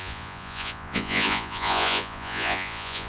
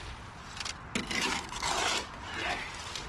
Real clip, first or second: second